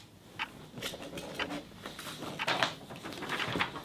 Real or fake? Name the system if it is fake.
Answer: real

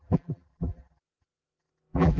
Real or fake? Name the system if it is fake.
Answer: fake, vocoder, BigVGAN v2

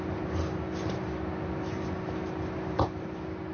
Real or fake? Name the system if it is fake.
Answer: real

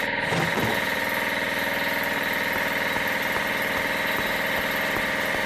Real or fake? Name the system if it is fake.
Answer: real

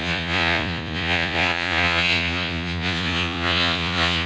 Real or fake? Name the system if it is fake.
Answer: fake, vocoder, Vocos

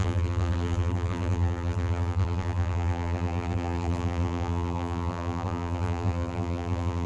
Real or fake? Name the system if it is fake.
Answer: fake, vocoder, BigVGAN v2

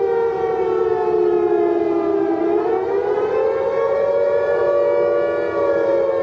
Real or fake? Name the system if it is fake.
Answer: real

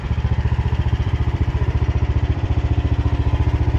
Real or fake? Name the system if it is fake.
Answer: fake, vocoder, BigVGAN v2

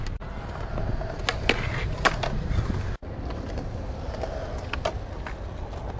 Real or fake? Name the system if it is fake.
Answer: real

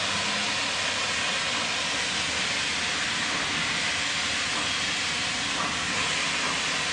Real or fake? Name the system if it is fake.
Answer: real